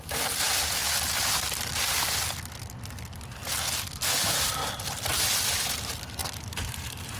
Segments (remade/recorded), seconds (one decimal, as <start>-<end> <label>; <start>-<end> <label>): 0.0-0.8 remade; 0.8-3.7 recorded; 3.7-4.6 remade; 4.6-5.2 recorded; 5.2-7.2 remade